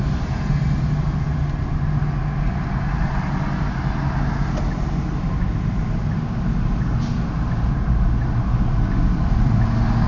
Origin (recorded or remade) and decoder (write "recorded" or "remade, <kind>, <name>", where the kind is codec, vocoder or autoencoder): recorded